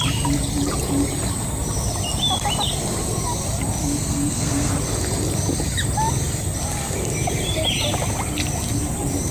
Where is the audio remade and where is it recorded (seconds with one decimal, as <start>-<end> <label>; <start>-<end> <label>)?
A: 0.0-3.8 recorded; 3.8-4.7 remade; 4.7-9.3 recorded

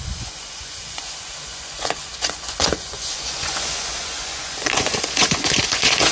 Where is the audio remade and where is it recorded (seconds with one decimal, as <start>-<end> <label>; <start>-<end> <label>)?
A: 0.0-6.1 remade

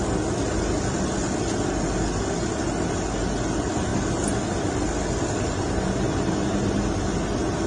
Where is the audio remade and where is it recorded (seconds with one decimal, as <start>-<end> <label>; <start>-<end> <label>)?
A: 0.0-7.7 recorded

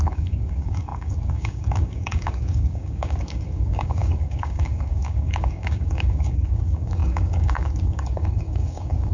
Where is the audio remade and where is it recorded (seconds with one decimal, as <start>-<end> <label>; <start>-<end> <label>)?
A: 0.0-9.1 remade

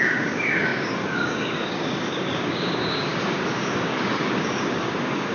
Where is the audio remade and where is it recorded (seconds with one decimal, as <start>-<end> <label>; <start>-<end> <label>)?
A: 0.0-5.3 remade

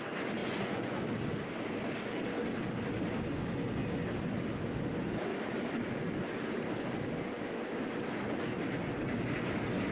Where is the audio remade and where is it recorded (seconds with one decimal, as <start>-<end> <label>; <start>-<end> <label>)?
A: 0.0-0.4 recorded; 0.4-1.0 remade; 1.0-9.9 recorded